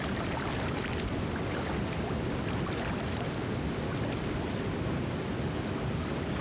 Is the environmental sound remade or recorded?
recorded